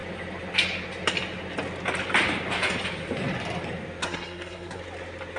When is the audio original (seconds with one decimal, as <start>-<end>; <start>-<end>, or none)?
0.0-4.0; 4.8-5.4